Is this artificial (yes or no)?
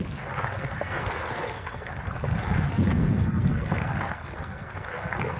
yes